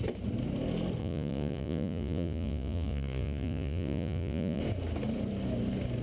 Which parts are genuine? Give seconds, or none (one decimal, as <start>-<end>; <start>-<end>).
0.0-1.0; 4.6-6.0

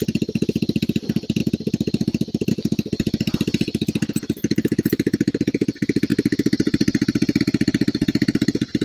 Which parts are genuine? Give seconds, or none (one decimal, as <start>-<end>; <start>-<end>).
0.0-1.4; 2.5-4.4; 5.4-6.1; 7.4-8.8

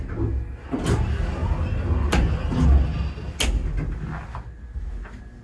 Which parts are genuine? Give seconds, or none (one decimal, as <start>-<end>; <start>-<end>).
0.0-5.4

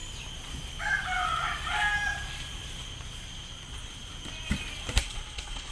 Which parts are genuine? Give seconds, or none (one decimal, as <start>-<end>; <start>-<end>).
0.0-5.0

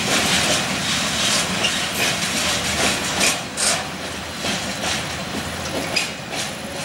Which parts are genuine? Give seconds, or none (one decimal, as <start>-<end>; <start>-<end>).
0.0-6.8

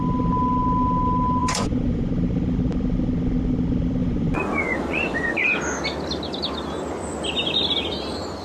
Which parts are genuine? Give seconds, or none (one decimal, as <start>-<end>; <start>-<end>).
0.0-1.4; 2.1-4.0; 5.4-8.4

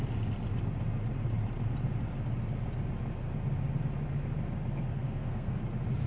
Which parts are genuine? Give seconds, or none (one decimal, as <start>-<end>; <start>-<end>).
0.0-4.9; 5.6-6.1